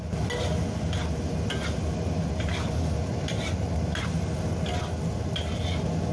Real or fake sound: real